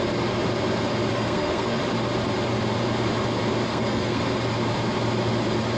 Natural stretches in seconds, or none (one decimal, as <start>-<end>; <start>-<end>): 0.0-1.1; 1.8-3.7; 4.2-5.8

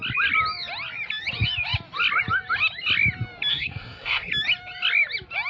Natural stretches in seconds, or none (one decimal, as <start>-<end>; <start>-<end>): 0.0-3.5; 4.3-5.5

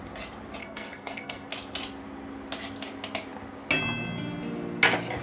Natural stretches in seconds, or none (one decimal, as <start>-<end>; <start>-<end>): 0.0-0.6; 1.5-5.2